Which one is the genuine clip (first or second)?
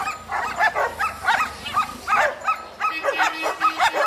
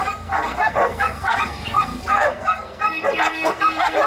first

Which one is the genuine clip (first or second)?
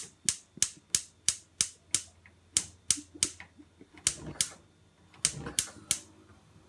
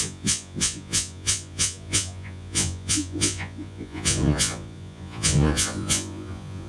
first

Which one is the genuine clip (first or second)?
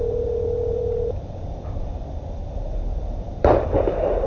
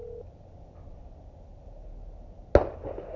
second